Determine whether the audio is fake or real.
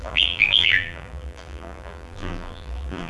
fake